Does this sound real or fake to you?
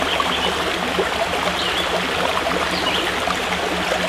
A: real